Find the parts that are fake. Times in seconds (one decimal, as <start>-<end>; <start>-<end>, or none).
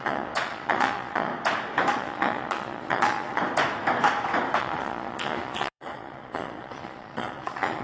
0.0-1.3; 1.9-3.4; 4.6-7.8